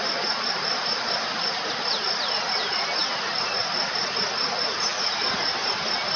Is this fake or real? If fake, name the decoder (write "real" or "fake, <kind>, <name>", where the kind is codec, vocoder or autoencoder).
real